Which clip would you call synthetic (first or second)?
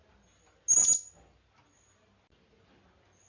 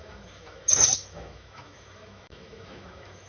second